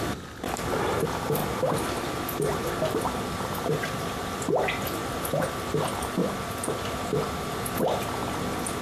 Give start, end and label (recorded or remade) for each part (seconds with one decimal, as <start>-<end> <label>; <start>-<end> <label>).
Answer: 0.0-8.8 remade